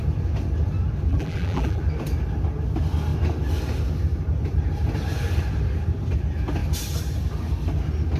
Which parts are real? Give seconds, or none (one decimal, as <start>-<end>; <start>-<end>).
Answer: 0.0-1.1; 1.8-8.2